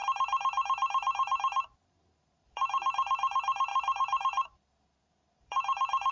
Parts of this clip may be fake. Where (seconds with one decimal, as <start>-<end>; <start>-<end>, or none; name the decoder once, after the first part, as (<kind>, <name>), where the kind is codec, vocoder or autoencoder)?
1.8-6.1 (vocoder, BigVGAN v2)

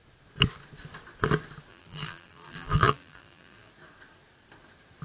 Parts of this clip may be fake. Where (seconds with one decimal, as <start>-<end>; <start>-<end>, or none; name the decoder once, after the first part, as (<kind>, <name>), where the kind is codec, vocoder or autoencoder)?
1.7-3.7 (vocoder, BigVGAN v2)

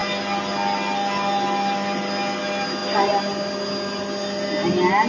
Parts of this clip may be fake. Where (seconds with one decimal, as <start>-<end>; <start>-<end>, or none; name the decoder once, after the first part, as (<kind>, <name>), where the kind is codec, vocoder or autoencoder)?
none

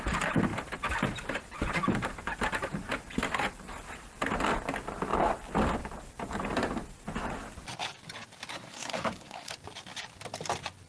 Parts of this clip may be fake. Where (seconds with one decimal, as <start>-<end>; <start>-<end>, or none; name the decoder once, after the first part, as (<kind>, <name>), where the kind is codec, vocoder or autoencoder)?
8.5-9.5 (codec, SNAC)

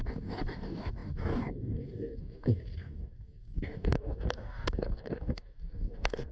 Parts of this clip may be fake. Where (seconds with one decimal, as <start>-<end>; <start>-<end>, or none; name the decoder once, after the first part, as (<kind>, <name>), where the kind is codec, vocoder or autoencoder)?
0.0-6.3 (codec, DAC)

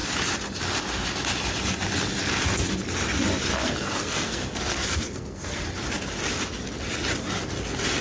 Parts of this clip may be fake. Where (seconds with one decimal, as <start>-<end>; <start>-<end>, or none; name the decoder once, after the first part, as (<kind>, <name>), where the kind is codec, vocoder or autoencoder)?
3.5-5.7 (codec, SNAC)

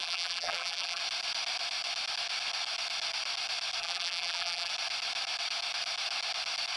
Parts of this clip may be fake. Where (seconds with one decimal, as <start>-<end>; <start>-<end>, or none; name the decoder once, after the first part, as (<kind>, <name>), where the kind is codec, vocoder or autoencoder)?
0.0-1.0 (vocoder, BigVGAN v2); 3.8-4.7